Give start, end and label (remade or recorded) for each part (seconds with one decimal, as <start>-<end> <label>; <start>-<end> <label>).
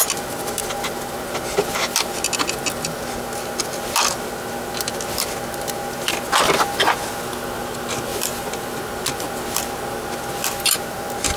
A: 0.0-8.1 recorded; 8.1-8.8 remade; 8.8-11.4 recorded